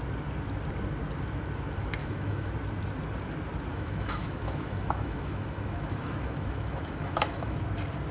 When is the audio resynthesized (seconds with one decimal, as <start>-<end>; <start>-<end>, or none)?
2.0-2.5; 3.7-7.6